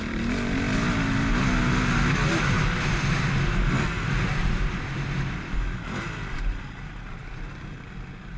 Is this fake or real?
real